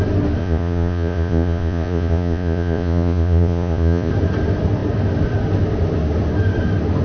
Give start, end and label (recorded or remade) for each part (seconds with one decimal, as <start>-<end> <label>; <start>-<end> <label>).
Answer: 0.0-0.4 recorded; 0.4-4.1 remade; 4.1-7.0 recorded